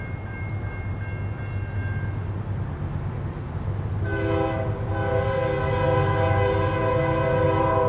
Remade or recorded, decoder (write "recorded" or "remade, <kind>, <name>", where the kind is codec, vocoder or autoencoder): recorded